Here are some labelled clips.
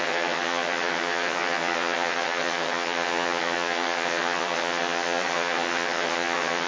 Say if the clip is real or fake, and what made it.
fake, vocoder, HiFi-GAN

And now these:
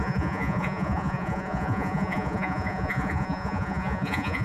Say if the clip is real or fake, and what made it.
fake, vocoder, Vocos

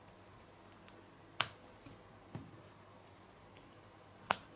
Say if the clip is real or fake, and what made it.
real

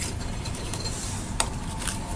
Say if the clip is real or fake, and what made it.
fake, vocoder, BigVGAN v2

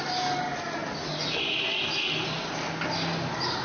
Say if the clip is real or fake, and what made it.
real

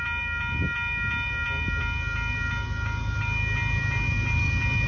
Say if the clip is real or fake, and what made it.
real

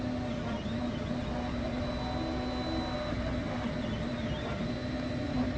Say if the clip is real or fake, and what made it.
real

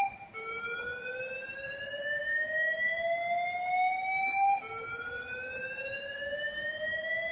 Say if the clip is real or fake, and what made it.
real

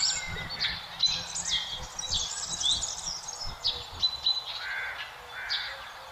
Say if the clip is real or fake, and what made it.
real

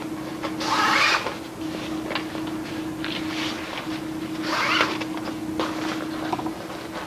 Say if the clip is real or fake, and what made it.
real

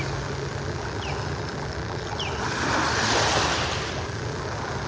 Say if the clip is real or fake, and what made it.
real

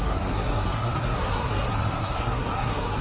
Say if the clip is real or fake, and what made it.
fake, codec, SNAC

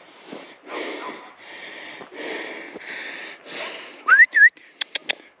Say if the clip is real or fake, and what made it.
real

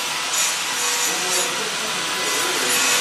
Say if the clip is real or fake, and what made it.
real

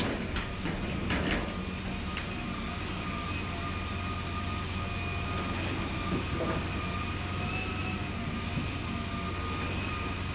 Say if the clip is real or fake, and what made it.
real